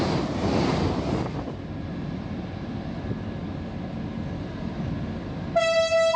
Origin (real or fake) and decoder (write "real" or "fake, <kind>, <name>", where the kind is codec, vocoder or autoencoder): real